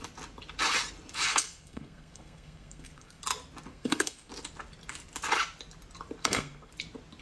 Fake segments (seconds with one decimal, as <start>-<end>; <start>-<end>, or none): 1.3-3.2; 3.7-4.3; 6.2-6.7